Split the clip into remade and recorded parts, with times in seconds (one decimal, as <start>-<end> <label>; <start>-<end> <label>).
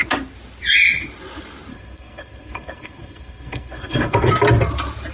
0.0-1.7 recorded; 1.7-4.3 remade; 4.3-5.1 recorded